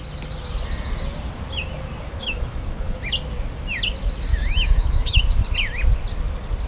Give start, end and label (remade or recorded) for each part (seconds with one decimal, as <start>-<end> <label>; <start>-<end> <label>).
0.0-2.1 recorded; 2.1-3.0 remade; 3.0-4.3 recorded; 4.3-5.2 remade; 5.2-6.7 recorded